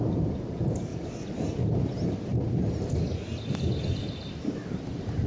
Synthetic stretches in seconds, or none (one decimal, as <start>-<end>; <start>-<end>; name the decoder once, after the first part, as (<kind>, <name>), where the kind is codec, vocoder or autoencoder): 0.0-0.9 (vocoder, BigVGAN v2); 1.5-2.3; 4.4-5.3

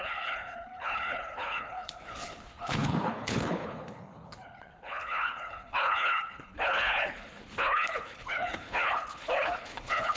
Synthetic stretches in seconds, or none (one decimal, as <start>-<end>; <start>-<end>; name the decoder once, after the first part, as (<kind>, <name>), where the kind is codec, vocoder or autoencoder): 0.0-10.2 (codec, HILCodec)